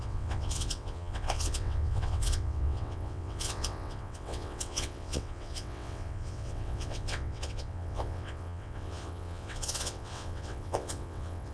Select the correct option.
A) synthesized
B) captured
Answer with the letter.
A